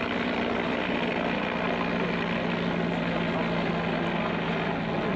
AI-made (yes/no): no